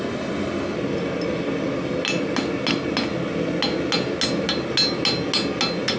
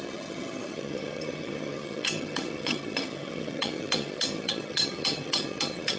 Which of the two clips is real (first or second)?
first